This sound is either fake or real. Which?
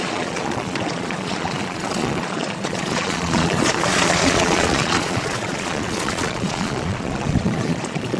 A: fake